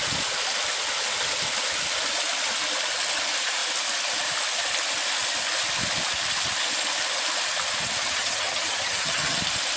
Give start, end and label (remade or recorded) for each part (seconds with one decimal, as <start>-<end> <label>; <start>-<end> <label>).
0.0-8.0 recorded; 8.0-9.4 remade; 9.4-9.8 recorded